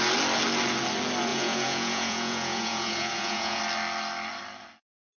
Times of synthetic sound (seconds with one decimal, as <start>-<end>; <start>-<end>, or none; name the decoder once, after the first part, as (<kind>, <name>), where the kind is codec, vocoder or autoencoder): 1.3-3.6 (vocoder, Vocos)